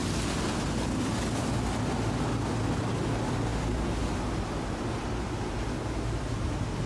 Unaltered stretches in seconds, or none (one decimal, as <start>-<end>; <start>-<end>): 0.0-6.9